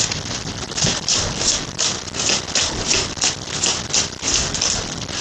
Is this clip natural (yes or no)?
yes